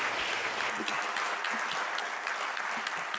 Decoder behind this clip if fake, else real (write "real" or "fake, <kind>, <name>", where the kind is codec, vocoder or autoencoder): real